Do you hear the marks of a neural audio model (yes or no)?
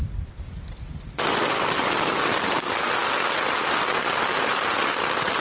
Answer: no